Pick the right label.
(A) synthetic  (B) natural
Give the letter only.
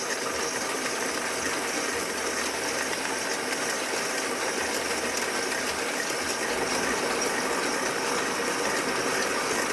B